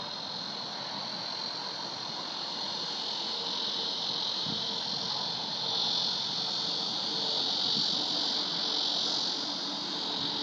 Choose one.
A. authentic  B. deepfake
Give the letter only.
A